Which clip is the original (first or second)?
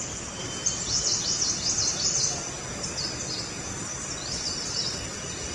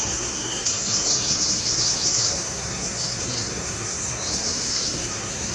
first